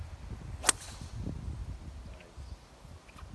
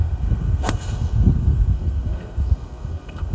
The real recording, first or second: first